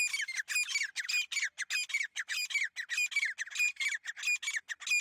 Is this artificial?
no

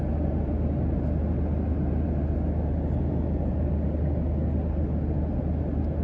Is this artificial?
no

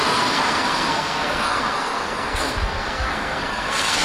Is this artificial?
yes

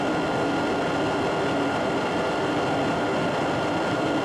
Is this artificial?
no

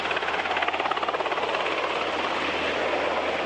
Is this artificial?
no